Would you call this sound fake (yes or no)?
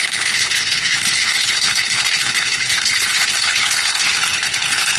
yes